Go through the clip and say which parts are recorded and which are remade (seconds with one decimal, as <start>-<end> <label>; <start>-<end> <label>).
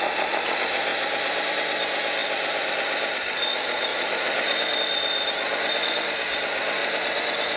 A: 0.0-0.9 recorded; 0.9-1.5 remade; 1.5-2.2 recorded; 2.2-2.7 remade; 2.7-3.9 recorded; 3.9-4.8 remade; 4.8-6.8 recorded; 6.8-7.6 remade